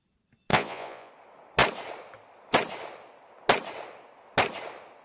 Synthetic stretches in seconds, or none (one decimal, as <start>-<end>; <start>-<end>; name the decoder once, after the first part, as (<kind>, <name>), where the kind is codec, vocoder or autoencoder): 0.5-1.1 (vocoder, Vocos)